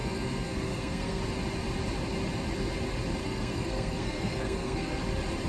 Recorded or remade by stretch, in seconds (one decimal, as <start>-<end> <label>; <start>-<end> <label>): 0.0-1.2 remade; 1.2-3.2 recorded; 3.2-5.0 remade; 5.0-5.5 recorded